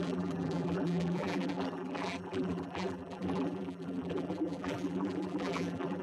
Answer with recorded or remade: remade